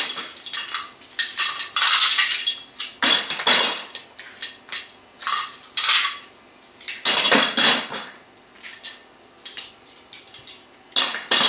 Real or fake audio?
real